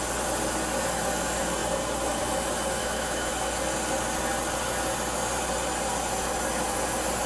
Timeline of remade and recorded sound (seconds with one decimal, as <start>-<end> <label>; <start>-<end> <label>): 0.0-2.8 recorded; 2.8-3.3 remade; 3.3-7.3 recorded